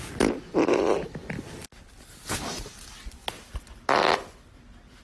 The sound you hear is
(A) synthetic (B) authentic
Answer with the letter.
B